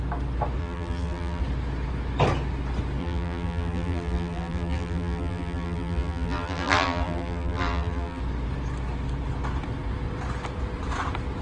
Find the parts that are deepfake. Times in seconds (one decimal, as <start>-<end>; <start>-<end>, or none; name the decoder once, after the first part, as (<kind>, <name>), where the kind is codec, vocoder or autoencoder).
0.6-1.4 (vocoder, BigVGAN v2); 3.0-8.2